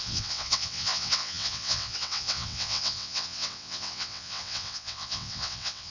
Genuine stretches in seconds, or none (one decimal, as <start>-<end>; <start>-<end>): none

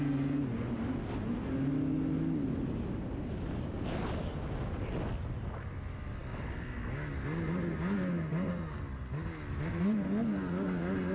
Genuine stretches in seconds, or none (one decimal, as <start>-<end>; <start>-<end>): 0.0-11.1

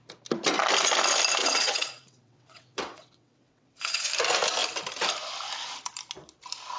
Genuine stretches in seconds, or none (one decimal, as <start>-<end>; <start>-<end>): 0.0-1.4; 4.1-6.8

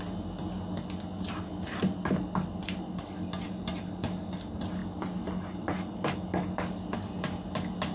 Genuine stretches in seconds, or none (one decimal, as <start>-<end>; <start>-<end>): 0.0-7.9

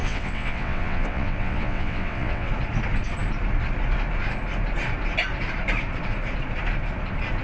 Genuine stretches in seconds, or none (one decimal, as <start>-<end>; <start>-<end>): 2.5-7.4